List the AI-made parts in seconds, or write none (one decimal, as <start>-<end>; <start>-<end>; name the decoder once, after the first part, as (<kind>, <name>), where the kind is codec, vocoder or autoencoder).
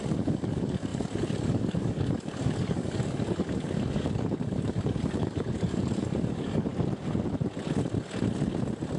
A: 0.0-6.7 (codec, DAC)